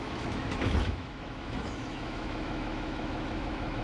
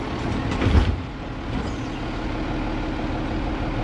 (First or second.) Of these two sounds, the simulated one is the first